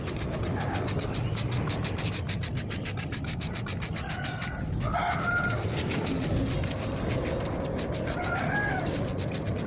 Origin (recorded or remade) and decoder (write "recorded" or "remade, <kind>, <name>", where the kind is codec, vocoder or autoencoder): recorded